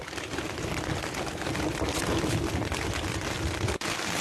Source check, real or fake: real